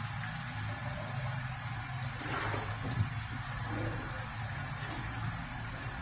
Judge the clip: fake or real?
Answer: real